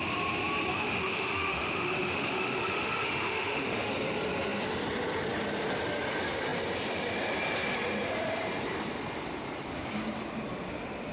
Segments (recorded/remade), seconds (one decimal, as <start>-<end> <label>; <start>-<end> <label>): 0.0-0.7 recorded; 0.7-3.9 remade; 3.9-11.1 recorded